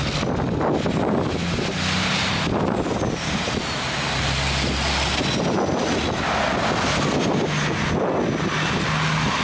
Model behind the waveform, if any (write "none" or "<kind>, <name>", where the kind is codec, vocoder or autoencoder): none